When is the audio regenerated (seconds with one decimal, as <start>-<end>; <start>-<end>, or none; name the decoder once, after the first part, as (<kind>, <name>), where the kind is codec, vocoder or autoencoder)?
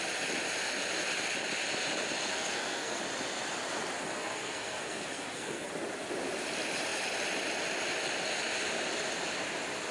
2.3-3.0 (codec, SNAC); 4.0-5.7